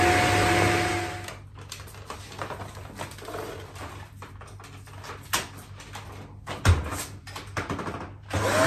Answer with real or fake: real